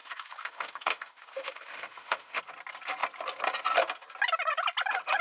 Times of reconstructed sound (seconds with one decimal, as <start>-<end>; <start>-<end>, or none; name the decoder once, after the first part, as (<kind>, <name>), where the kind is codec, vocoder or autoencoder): 0.0-2.4 (autoencoder, DAC-VAE)